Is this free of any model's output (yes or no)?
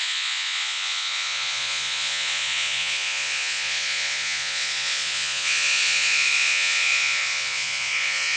no